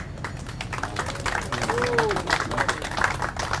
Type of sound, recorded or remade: recorded